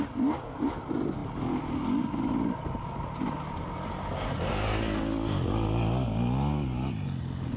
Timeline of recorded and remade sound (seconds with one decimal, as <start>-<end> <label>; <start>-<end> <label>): 0.0-7.6 recorded